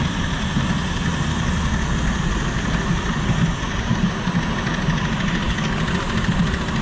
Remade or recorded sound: recorded